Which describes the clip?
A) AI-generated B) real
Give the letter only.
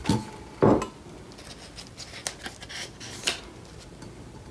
B